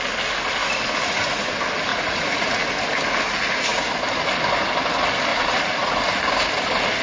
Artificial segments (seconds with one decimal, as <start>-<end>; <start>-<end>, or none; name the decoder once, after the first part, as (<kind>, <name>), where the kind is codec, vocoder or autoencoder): 0.6-1.5 (vocoder, Vocos); 1.9-2.6; 5.3-6.2